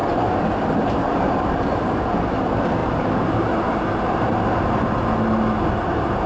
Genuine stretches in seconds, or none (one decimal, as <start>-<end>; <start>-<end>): 2.1-2.8; 5.1-6.3